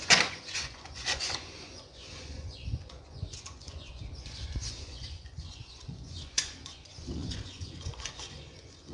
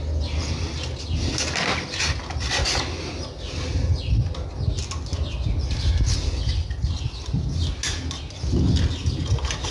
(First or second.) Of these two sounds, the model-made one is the first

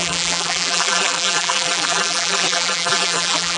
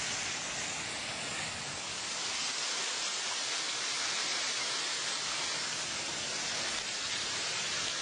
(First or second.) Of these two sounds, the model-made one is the first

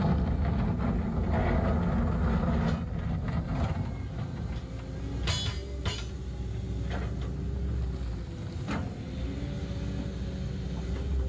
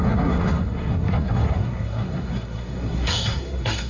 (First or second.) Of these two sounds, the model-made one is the second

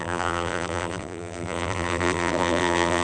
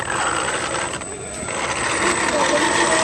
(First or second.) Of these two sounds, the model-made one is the first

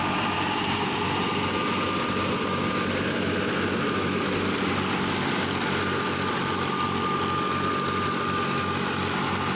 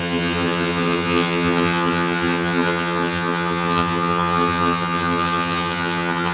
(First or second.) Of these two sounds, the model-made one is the second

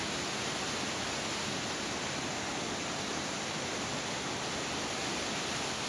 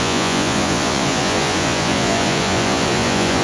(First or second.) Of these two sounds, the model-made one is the second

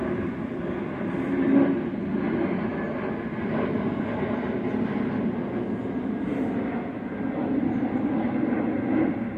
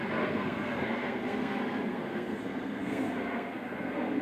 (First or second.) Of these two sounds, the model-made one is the second